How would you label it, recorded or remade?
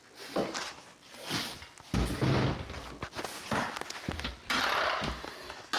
recorded